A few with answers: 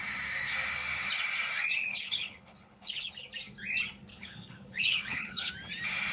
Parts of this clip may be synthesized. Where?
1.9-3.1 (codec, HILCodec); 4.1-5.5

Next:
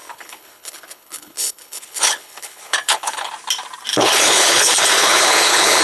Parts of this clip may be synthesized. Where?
0.0-3.3 (codec, HILCodec); 3.9-5.8

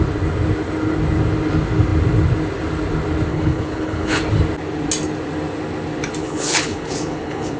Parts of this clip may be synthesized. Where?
3.3-4.2 (codec, HILCodec); 6.2-7.6

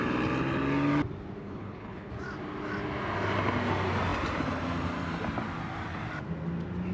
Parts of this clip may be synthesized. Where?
1.4-2.1 (codec, HILCodec)